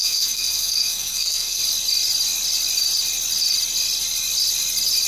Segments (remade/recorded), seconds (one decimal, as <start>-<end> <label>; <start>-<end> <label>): 0.0-1.6 remade; 1.6-5.1 recorded